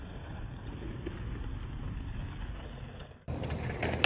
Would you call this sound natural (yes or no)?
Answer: yes